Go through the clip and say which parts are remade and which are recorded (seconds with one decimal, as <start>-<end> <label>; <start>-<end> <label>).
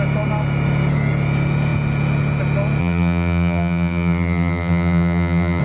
0.0-2.8 recorded; 2.8-5.6 remade